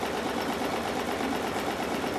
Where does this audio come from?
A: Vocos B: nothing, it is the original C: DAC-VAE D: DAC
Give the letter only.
B